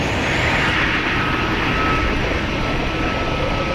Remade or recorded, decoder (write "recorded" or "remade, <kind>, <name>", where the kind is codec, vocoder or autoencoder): recorded